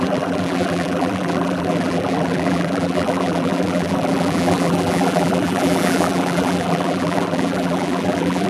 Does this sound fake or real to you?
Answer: fake